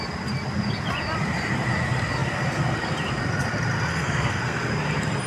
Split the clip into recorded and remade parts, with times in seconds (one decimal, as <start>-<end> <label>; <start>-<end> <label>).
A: 0.0-3.9 recorded; 3.9-4.6 remade; 4.6-5.3 recorded